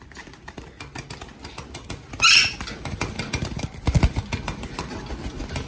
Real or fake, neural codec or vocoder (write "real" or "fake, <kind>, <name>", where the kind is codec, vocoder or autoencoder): real